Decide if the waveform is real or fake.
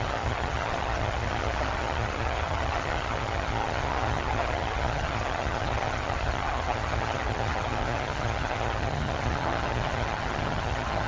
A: fake